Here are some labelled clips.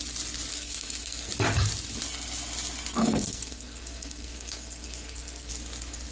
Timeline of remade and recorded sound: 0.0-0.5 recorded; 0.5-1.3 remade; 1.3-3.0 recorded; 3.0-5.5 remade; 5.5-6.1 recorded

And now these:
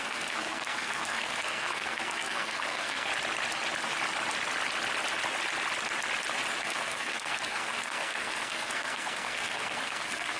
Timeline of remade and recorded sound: 0.0-3.1 remade; 3.1-6.6 recorded; 6.6-10.4 remade

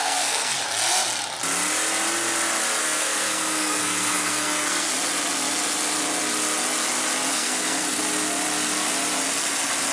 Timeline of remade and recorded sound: 0.0-0.6 remade; 0.6-2.8 recorded; 2.8-4.9 remade; 4.9-7.3 recorded; 7.3-8.0 remade; 8.0-9.9 recorded

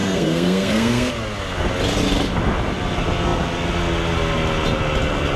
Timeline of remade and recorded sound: 0.0-1.1 remade; 1.1-5.4 recorded

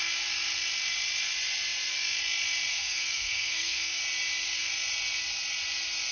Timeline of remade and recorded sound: 0.0-2.7 recorded; 2.7-4.0 remade; 4.0-6.1 recorded

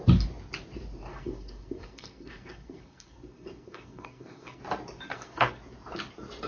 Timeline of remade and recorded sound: 0.0-1.1 recorded; 1.1-4.6 remade; 4.6-5.1 recorded; 5.1-5.6 remade; 5.6-6.5 recorded